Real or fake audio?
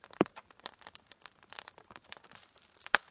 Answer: fake